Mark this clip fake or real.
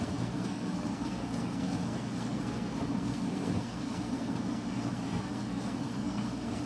fake